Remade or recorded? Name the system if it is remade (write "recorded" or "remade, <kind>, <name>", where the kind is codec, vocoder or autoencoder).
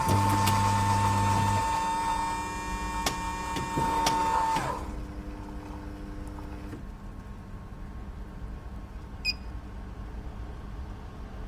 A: recorded